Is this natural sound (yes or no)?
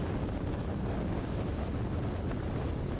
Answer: yes